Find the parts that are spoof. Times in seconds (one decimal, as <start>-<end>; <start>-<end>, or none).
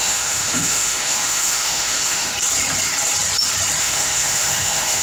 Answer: 0.0-2.3; 3.8-5.0